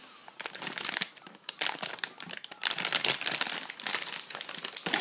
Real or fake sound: real